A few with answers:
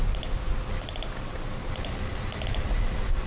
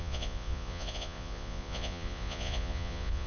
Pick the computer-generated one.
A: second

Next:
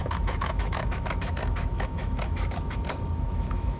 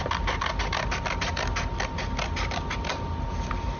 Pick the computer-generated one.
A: first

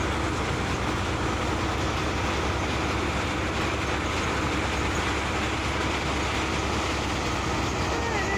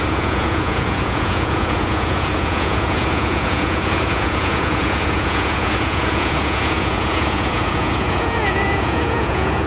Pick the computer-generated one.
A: second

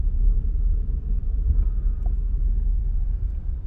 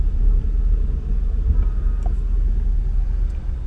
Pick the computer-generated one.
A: first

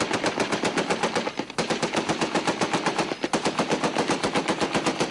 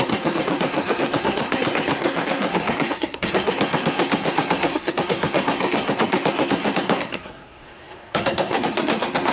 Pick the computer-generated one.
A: second